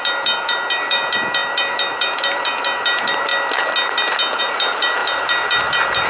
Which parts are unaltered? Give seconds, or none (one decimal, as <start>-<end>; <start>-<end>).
3.3-4.4